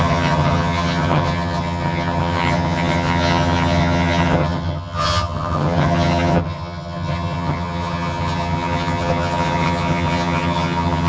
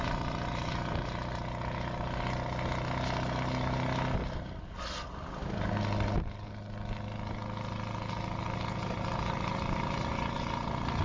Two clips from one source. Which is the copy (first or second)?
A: first